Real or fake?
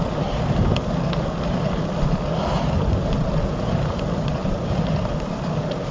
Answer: real